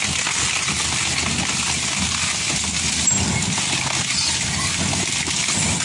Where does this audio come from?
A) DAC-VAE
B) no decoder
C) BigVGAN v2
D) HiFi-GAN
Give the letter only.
B